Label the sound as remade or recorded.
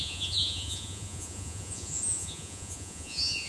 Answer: remade